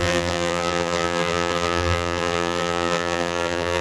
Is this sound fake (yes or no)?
yes